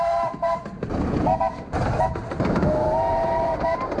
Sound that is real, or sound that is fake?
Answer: real